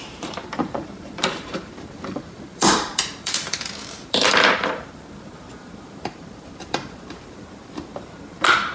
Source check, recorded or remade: remade